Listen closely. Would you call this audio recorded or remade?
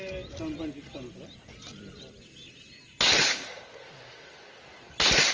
recorded